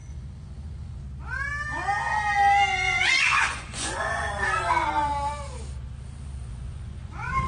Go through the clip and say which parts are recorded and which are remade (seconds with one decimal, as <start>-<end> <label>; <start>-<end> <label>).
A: 0.0-1.0 remade; 1.0-2.7 recorded; 2.7-4.7 remade; 4.7-6.5 recorded; 6.5-7.5 remade